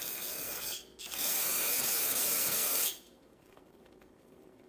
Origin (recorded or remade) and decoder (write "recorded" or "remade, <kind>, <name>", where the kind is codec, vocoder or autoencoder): remade, codec, SNAC